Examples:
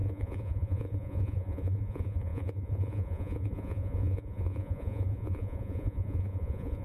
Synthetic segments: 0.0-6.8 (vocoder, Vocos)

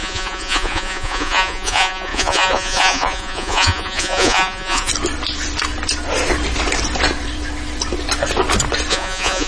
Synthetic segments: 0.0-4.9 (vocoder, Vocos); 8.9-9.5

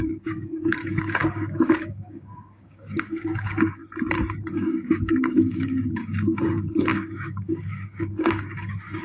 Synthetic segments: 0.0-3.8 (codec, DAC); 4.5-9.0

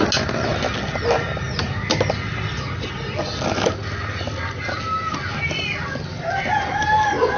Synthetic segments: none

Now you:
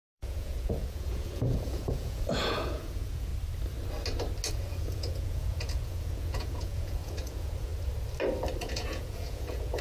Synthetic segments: 0.0-3.3 (vocoder, Vocos); 4.5-7.7; 8.6-9.8